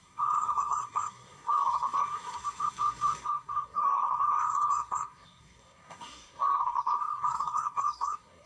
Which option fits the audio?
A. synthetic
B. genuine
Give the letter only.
A